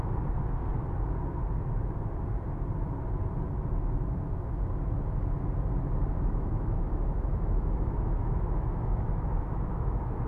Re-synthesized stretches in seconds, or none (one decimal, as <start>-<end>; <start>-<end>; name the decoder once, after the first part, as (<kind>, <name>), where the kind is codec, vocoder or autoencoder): 6.3-10.3 (autoencoder, DAC-VAE)